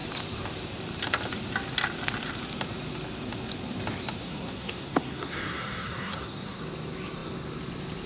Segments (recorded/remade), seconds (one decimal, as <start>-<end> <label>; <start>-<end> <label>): 0.0-4.2 recorded; 4.2-6.6 remade; 6.6-8.1 recorded